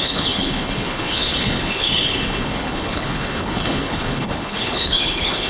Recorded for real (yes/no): no